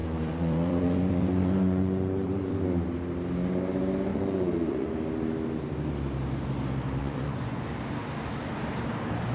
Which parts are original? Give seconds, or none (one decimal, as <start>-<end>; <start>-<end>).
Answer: 2.5-4.1; 4.9-7.0; 7.6-9.3